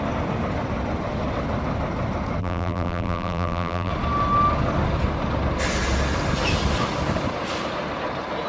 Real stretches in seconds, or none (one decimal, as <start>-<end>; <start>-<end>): 0.0-2.4; 3.9-8.5